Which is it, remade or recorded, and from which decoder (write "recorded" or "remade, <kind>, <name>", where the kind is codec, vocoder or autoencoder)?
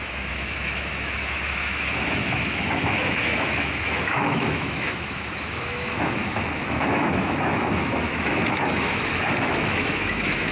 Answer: remade, autoencoder, DAC-VAE